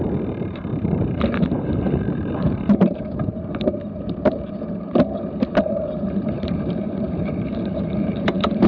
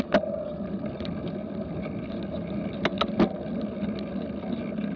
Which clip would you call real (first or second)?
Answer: second